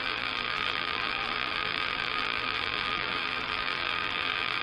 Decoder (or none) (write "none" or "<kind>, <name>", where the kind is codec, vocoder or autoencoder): vocoder, BigVGAN v2